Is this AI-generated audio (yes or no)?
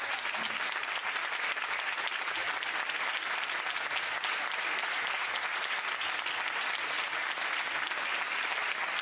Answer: no